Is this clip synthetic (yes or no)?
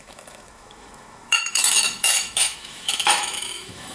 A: yes